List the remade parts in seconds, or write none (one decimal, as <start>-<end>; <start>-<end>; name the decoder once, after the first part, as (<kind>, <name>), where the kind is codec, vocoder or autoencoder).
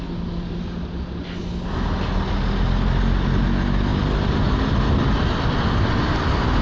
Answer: none